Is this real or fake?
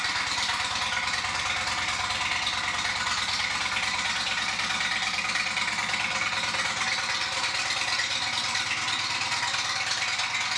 real